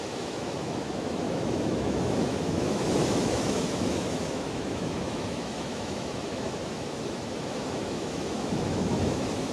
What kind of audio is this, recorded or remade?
remade